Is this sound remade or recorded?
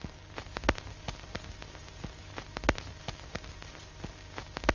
recorded